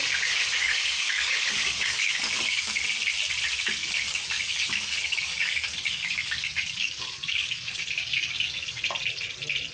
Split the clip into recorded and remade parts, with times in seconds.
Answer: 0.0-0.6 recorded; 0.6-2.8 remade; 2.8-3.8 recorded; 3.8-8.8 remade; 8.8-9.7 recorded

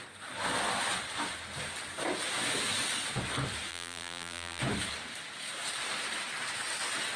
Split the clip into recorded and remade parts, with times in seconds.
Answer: 0.0-3.7 recorded; 3.7-4.6 remade; 4.6-7.2 recorded

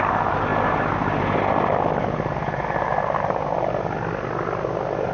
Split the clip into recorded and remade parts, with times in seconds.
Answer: 0.0-5.1 recorded

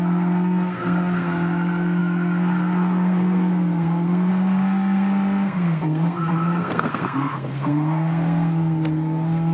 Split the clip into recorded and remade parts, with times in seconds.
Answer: 0.0-9.5 remade

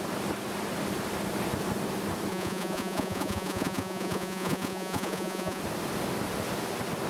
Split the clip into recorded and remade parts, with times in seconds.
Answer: 0.0-2.3 recorded; 2.3-5.6 remade; 5.6-7.1 recorded

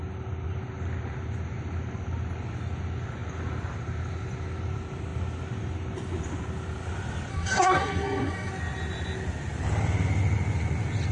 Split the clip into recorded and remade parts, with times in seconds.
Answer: 0.0-7.3 recorded; 7.3-8.5 remade; 8.5-11.1 recorded

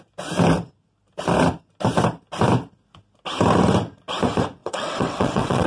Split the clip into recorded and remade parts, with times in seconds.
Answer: 0.0-4.6 recorded; 4.6-5.7 remade

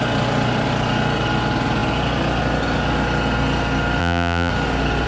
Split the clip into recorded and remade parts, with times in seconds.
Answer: 0.0-4.0 recorded; 4.0-4.5 remade; 4.5-5.1 recorded